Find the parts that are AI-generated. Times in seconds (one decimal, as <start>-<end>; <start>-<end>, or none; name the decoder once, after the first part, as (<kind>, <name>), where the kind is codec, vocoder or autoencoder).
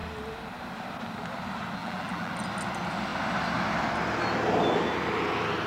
1.8-2.3 (vocoder, BigVGAN v2)